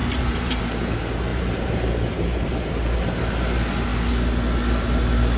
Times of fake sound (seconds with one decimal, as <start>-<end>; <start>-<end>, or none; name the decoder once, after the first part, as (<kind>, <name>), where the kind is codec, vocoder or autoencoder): 0.0-0.6 (vocoder, BigVGAN v2); 1.3-2.7